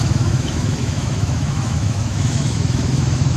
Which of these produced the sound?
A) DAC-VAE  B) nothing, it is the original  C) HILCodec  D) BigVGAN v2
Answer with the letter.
A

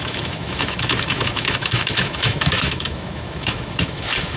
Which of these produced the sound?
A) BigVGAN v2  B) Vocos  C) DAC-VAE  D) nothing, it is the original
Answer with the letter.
C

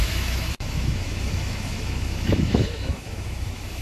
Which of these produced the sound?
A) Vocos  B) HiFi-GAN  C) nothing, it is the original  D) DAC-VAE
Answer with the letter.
D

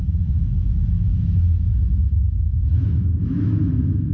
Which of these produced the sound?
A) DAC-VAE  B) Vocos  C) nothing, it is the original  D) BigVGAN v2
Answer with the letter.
A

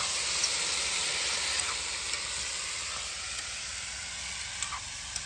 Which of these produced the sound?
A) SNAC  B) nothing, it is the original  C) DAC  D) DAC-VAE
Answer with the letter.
B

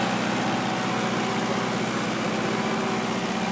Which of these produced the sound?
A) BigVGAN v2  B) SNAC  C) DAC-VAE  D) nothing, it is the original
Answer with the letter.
D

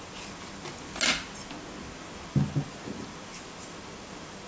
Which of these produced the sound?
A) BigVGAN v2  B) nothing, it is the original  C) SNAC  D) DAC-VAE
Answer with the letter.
B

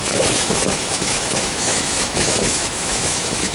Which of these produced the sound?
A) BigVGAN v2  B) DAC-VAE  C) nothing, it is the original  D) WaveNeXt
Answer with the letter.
B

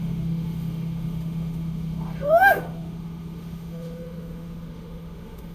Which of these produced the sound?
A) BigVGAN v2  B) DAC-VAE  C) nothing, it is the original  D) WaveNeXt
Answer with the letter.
B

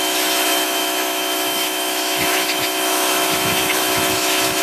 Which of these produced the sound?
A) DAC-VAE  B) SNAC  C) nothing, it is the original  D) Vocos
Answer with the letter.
A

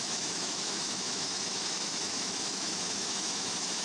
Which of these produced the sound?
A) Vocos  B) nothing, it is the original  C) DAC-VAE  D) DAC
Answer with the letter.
C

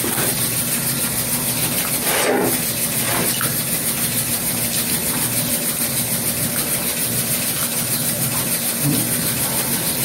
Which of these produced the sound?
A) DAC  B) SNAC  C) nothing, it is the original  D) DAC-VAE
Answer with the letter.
C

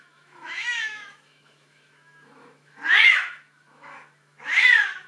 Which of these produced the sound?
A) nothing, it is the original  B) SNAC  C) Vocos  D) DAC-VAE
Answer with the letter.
D